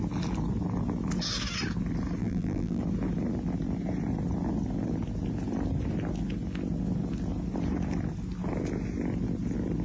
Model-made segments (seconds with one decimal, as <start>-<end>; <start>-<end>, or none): 2.2-2.8